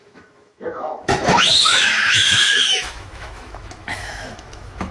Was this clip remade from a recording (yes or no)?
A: yes